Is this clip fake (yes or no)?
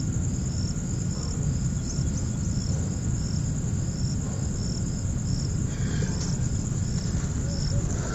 no